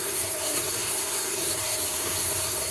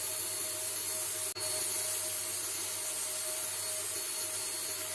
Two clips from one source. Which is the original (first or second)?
second